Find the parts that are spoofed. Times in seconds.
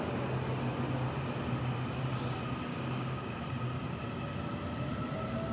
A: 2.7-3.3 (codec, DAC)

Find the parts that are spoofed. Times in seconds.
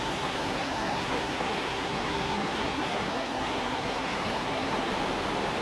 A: 0.0-4.9 (codec, SNAC)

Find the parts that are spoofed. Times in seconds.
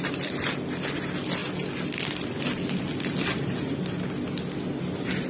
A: none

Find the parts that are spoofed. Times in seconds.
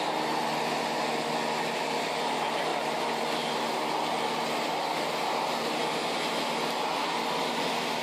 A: none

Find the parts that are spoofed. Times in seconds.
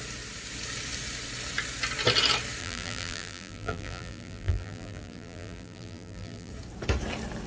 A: 2.6-6.5 (vocoder, BigVGAN v2)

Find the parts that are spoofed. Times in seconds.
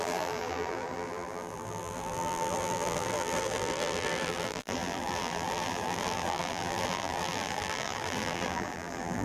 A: 0.0-9.2 (vocoder, BigVGAN v2)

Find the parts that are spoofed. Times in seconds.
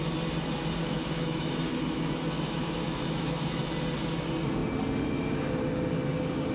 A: 0.8-3.6 (autoencoder, DAC-VAE)